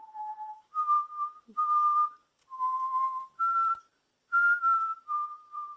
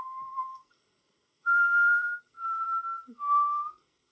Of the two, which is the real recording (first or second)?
first